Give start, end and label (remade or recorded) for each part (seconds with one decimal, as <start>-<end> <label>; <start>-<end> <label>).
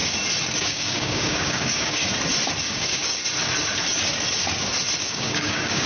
0.0-0.6 recorded; 0.6-2.0 remade; 2.0-2.6 recorded; 2.6-3.2 remade; 3.2-5.0 recorded; 5.0-5.9 remade